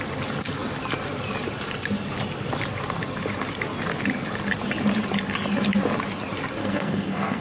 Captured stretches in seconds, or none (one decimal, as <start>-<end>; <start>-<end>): 0.0-6.6